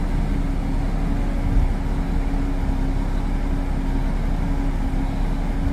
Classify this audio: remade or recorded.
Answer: recorded